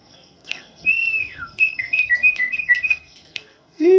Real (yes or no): no